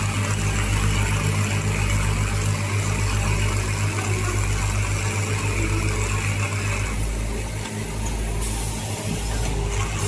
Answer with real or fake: real